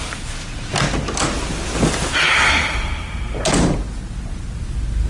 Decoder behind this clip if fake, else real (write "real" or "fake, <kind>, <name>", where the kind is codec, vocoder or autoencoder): real